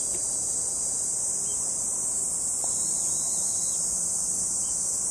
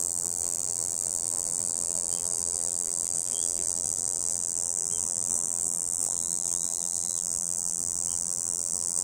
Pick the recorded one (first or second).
first